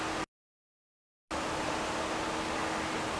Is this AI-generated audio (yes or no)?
no